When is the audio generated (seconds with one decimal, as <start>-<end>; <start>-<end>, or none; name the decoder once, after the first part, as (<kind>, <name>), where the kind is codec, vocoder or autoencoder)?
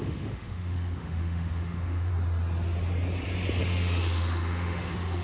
0.0-2.1 (autoencoder, DAC-VAE); 3.6-5.2